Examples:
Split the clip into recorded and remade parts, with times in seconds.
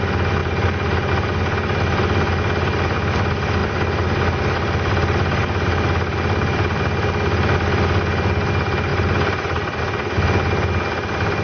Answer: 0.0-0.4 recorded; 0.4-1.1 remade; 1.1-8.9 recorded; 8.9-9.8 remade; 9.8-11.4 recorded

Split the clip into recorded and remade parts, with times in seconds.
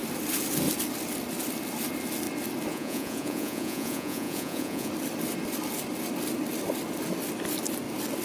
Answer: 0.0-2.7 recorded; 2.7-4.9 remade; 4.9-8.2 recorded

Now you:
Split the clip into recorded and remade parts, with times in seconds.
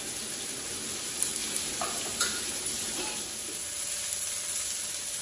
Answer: 0.0-1.4 recorded; 1.4-3.2 remade; 3.2-5.2 recorded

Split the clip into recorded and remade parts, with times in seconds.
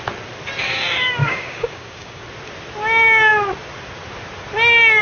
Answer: 0.0-1.2 recorded; 1.2-2.2 remade; 2.2-5.0 recorded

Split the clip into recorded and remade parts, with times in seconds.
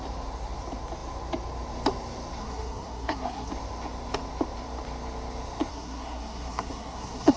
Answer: 0.0-2.4 recorded; 2.4-3.5 remade; 3.5-5.7 recorded; 5.7-7.4 remade